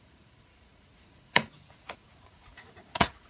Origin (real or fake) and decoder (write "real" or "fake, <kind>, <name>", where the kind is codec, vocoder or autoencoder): fake, vocoder, Vocos